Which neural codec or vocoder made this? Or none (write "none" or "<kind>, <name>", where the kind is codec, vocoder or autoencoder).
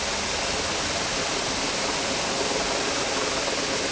none